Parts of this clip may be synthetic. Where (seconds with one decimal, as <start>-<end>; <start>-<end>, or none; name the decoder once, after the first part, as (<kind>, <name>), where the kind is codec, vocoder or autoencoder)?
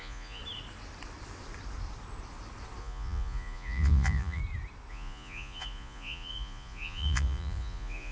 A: 0.0-0.4 (vocoder, Vocos); 2.8-4.4; 4.9-8.1